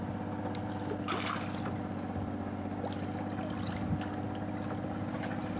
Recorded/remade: recorded